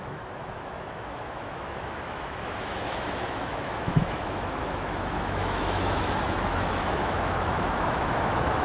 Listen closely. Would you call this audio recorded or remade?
remade